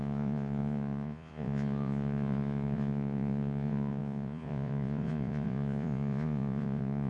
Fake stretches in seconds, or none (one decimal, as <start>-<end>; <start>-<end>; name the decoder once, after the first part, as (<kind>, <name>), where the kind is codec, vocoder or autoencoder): 0.0-7.1 (vocoder, Vocos)